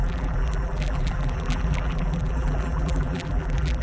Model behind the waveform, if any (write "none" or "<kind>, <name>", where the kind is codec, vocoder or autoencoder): vocoder, BigVGAN v2